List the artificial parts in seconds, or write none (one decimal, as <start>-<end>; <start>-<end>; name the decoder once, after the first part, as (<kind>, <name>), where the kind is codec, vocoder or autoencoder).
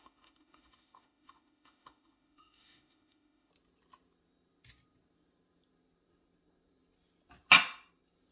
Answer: 0.0-3.5 (autoencoder, DAC-VAE)